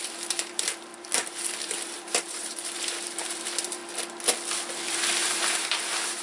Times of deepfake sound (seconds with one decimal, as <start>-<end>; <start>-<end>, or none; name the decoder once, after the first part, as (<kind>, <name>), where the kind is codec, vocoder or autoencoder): 0.0-3.8 (vocoder, BigVGAN v2); 4.8-6.2